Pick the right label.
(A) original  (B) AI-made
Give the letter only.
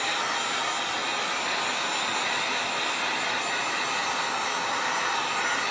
A